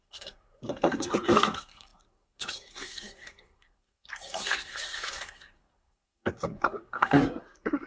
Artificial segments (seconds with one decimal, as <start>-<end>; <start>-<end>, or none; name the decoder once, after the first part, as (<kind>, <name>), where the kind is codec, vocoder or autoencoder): 0.0-7.9 (codec, SNAC)